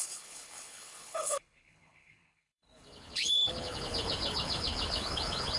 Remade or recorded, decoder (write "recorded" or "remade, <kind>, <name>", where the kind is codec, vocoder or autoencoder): remade, codec, HILCodec